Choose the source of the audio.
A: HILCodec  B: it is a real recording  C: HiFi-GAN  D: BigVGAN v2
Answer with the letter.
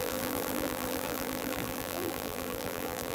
D